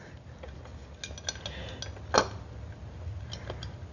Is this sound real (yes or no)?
yes